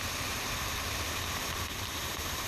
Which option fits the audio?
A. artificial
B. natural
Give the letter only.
A